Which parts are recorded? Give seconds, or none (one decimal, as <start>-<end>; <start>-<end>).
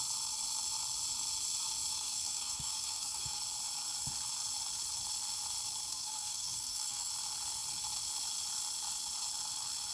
0.0-1.9; 3.4-5.9; 7.1-9.9